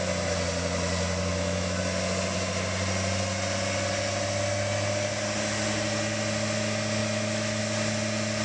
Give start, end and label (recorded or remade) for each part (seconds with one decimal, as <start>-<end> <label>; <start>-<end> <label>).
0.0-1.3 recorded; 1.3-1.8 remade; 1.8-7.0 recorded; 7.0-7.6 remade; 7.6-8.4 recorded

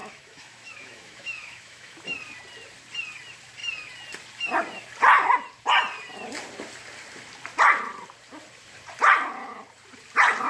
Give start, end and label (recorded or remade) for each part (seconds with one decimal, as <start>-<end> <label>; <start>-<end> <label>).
0.0-2.0 remade; 2.0-10.5 recorded

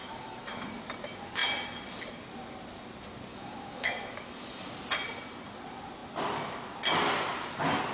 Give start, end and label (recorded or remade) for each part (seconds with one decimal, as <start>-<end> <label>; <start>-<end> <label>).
0.0-0.7 remade; 0.7-3.3 recorded; 3.3-4.6 remade; 4.6-7.9 recorded

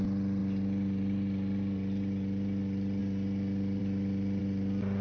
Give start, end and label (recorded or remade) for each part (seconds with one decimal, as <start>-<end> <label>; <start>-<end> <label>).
0.0-5.0 recorded

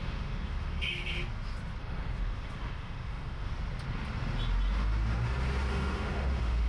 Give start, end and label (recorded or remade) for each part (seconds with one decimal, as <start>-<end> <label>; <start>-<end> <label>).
0.0-0.9 remade; 0.9-1.8 recorded; 1.8-3.5 remade; 3.5-5.7 recorded; 5.7-6.7 remade

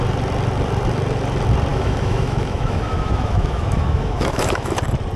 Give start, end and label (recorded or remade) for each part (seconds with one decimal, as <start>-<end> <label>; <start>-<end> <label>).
0.0-1.7 recorded; 1.7-4.8 remade; 4.8-5.2 recorded

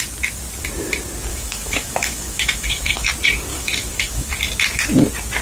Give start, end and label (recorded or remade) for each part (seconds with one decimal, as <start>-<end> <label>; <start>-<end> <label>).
0.0-1.3 recorded; 1.3-3.1 remade; 3.1-3.5 recorded; 3.5-4.3 remade; 4.3-5.4 recorded